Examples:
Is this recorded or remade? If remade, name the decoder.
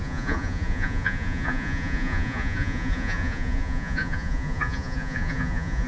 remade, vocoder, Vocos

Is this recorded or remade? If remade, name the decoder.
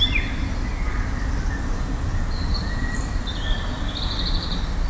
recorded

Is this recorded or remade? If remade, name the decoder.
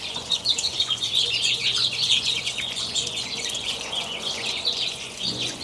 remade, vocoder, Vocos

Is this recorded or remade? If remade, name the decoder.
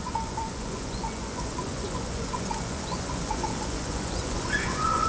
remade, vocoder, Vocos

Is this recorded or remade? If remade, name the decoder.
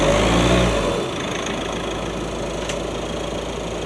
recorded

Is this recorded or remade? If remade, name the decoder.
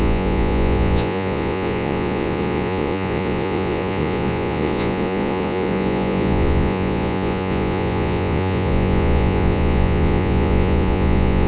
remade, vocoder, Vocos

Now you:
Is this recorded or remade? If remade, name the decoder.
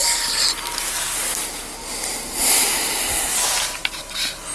recorded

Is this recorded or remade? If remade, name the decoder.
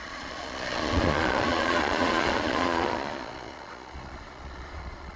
remade, vocoder, Vocos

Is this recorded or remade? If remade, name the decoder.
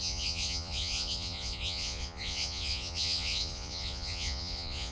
remade, vocoder, Vocos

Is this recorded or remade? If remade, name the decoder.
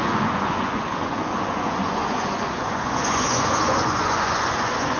remade, vocoder, Vocos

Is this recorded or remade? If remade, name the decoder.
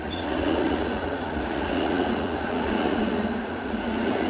remade, vocoder, Vocos